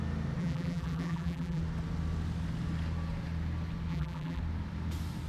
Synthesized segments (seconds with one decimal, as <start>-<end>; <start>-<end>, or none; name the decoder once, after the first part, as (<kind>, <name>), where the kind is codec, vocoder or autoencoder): 0.4-1.6 (vocoder, BigVGAN v2); 3.9-4.4